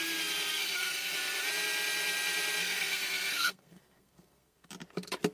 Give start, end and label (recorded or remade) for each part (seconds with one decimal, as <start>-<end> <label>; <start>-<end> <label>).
0.0-0.5 recorded; 0.5-1.1 remade; 1.1-2.6 recorded; 2.6-4.7 remade; 4.7-5.3 recorded